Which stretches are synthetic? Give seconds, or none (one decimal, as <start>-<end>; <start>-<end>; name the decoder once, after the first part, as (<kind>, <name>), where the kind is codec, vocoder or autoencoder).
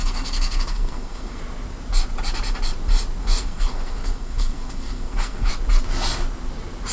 0.0-1.4 (codec, SNAC); 3.2-5.5